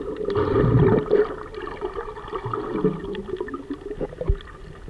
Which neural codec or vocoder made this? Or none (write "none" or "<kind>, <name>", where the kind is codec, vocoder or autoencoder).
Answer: none